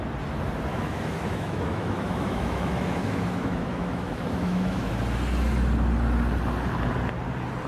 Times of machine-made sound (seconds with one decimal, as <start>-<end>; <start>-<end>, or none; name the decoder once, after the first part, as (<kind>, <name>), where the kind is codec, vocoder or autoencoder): 0.7-4.9 (autoencoder, DAC-VAE)